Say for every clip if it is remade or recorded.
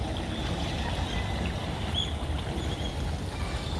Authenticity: recorded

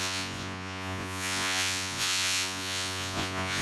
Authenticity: remade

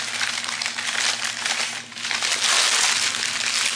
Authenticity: recorded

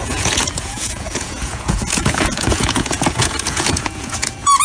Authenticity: remade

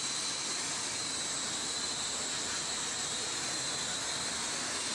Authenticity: recorded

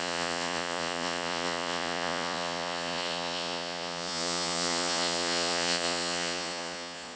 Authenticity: remade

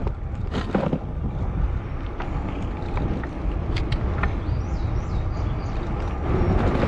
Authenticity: recorded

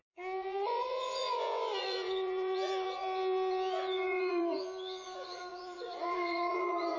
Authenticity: remade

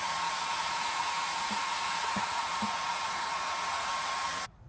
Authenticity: remade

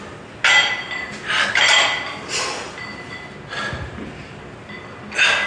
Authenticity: recorded